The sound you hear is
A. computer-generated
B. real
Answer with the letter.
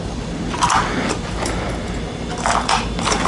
B